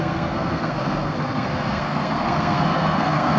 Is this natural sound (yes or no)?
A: no